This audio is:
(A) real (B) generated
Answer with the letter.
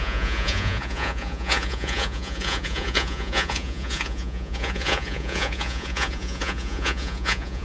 B